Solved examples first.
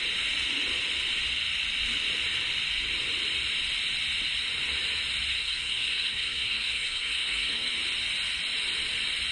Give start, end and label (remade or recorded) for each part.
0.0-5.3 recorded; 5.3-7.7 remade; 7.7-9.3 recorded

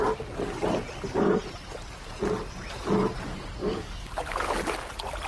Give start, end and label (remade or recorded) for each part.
0.0-3.6 recorded; 3.6-4.5 remade; 4.5-5.3 recorded